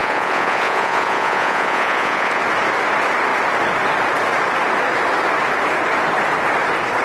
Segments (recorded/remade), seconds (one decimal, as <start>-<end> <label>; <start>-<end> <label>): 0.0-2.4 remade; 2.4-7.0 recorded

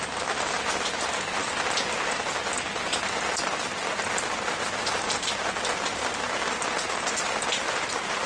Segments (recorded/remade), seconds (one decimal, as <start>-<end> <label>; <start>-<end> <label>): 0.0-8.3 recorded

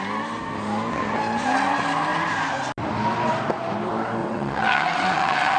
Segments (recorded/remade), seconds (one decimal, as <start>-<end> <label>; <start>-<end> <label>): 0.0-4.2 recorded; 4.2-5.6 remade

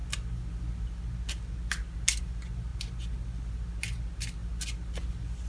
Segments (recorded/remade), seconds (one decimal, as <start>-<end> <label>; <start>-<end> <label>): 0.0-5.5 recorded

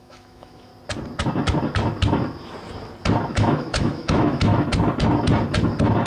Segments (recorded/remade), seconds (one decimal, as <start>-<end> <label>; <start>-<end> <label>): 0.0-0.7 remade; 0.7-3.3 recorded; 3.3-4.5 remade; 4.5-6.1 recorded